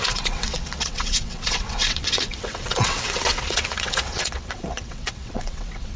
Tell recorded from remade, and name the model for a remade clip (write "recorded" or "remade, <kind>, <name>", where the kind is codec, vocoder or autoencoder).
remade, vocoder, WaveNeXt